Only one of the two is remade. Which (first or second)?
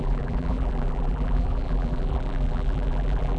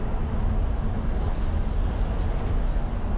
first